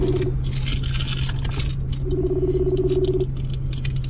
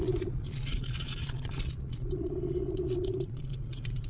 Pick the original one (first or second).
first